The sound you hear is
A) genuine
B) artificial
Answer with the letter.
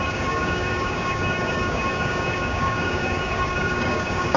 B